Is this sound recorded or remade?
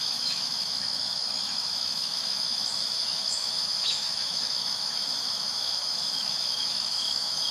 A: remade